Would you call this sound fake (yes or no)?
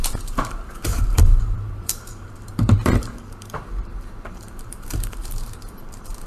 yes